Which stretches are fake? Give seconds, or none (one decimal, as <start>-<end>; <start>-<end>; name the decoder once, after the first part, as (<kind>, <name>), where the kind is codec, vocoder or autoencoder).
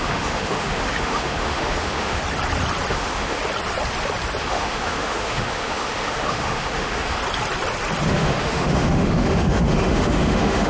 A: 0.0-2.2 (autoencoder, DAC-VAE); 2.9-3.4; 4.4-7.2; 8.1-10.7